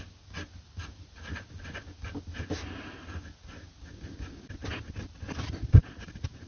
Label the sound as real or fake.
real